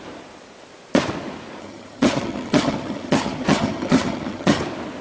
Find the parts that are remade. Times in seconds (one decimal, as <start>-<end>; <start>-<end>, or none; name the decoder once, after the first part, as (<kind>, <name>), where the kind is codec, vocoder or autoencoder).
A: 1.6-4.6 (vocoder, HiFi-GAN)